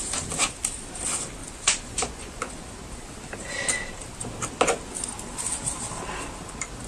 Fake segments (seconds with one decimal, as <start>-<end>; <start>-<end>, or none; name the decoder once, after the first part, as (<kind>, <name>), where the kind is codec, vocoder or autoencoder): 1.4-2.4 (vocoder, Vocos)